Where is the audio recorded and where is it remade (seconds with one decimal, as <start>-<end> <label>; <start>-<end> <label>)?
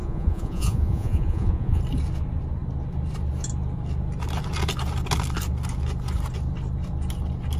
0.0-1.8 remade; 1.8-7.6 recorded